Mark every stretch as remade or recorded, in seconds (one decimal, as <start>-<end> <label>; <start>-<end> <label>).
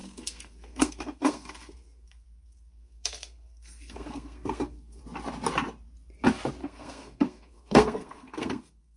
0.0-5.0 remade; 5.0-6.6 recorded; 6.6-9.0 remade